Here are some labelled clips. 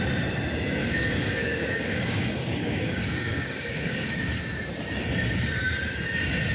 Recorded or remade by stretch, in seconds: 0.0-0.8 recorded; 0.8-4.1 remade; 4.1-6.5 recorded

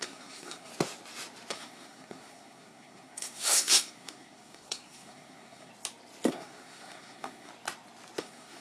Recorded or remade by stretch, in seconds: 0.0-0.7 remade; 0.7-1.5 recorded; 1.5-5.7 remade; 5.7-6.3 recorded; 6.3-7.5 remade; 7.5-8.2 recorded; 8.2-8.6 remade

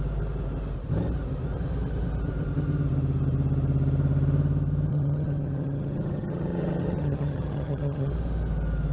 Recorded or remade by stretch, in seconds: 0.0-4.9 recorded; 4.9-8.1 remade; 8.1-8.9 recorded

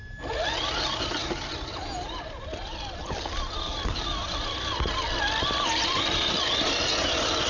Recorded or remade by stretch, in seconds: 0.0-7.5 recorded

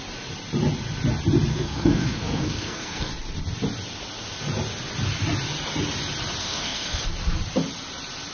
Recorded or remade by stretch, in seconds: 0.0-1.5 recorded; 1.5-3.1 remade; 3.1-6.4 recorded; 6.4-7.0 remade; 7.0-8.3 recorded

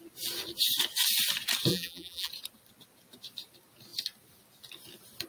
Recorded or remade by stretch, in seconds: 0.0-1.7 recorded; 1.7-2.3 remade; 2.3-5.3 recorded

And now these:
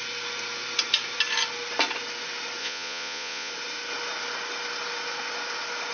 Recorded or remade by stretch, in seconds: 0.0-2.6 recorded; 2.6-3.5 remade; 3.5-5.9 recorded

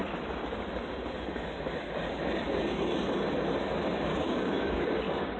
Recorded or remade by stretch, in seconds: 0.0-4.1 recorded; 4.1-4.8 remade; 4.8-5.4 recorded